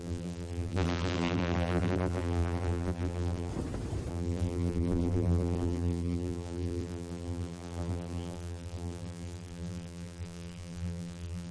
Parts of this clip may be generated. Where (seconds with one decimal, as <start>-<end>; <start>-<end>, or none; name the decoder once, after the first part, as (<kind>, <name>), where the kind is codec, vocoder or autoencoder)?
0.0-3.5 (vocoder, BigVGAN v2); 4.1-11.5